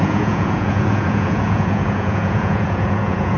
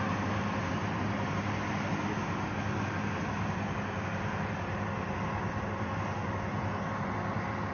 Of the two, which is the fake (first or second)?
first